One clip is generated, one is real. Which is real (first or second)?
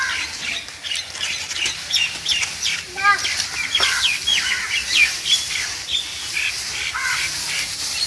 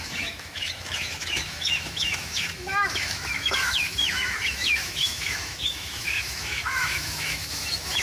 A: first